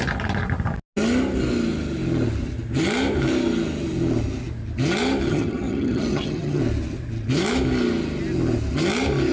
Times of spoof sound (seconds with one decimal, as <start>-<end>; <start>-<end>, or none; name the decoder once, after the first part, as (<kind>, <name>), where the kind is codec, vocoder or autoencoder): 5.3-6.6 (vocoder, HiFi-GAN)